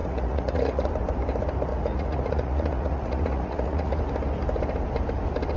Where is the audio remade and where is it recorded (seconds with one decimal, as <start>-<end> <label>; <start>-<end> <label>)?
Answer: 0.0-0.9 remade; 0.9-1.7 recorded; 1.7-4.0 remade; 4.0-5.6 recorded